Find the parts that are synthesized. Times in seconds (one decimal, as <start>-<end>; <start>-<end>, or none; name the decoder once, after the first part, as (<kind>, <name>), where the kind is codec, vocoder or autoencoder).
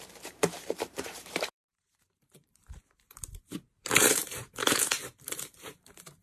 0.0-6.2 (vocoder, BigVGAN v2)